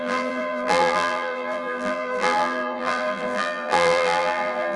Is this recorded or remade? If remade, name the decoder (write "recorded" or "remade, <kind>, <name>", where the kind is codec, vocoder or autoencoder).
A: remade, vocoder, BigVGAN v2